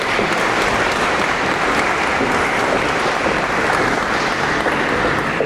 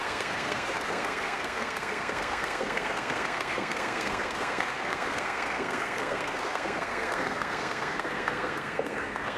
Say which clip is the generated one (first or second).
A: second